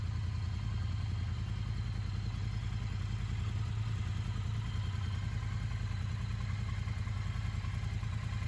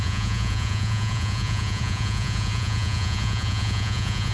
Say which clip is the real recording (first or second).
first